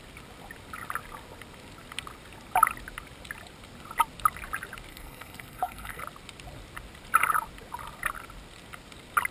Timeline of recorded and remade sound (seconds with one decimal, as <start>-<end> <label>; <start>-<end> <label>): 0.0-4.9 recorded; 4.9-6.0 remade; 6.0-9.3 recorded